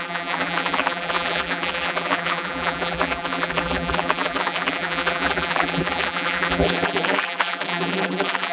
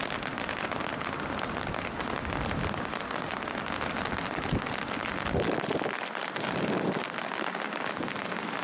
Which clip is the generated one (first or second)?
first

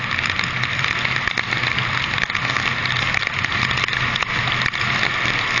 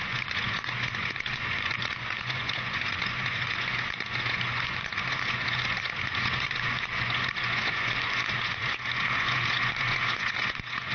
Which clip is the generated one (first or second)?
second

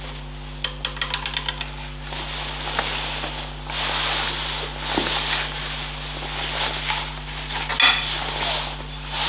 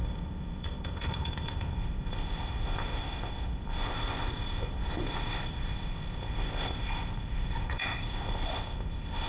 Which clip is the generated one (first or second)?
second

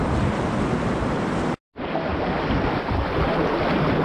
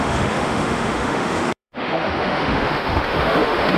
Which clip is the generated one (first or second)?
second